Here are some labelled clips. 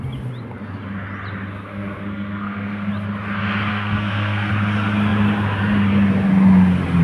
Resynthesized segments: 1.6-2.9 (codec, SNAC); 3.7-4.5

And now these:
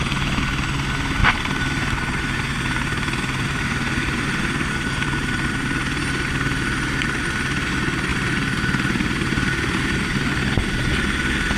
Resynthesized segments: 1.2-6.1 (vocoder, BigVGAN v2); 8.1-10.9

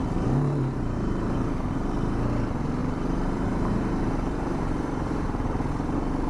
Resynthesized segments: 0.0-1.6 (vocoder, BigVGAN v2); 2.8-5.5

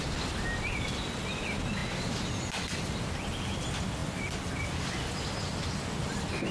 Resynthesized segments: none

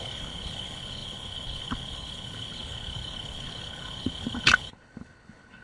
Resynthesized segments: 0.0-5.6 (codec, HILCodec)

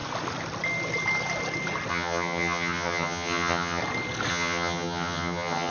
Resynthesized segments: 1.9-3.8 (vocoder, HiFi-GAN); 4.3-5.7